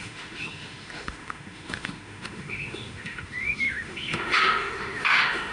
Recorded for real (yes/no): no